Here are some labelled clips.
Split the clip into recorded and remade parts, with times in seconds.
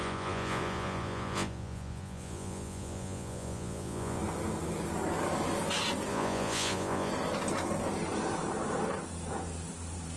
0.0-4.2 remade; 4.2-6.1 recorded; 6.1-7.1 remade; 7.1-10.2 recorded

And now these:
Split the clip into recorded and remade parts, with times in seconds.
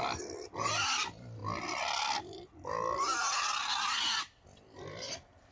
0.0-5.5 recorded